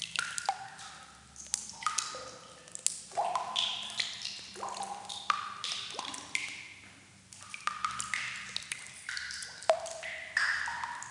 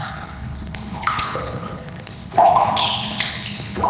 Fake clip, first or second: second